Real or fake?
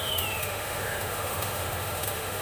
fake